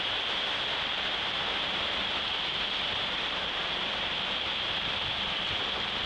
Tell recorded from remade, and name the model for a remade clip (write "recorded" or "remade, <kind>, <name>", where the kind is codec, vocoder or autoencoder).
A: recorded